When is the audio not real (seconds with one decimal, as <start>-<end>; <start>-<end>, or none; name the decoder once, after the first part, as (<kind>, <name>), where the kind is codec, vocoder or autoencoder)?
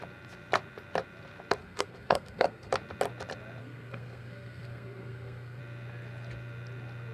1.6-2.7 (codec, SNAC); 3.6-5.6